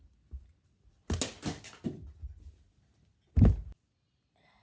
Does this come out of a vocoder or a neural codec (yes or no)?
no